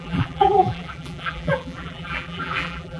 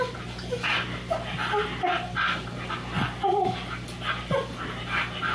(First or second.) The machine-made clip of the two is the first